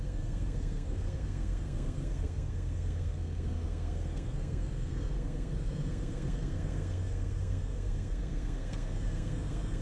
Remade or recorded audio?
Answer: remade